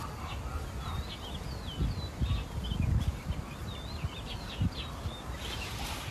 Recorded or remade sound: recorded